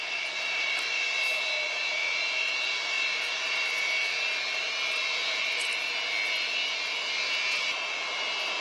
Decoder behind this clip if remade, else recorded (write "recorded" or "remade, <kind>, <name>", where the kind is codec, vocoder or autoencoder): recorded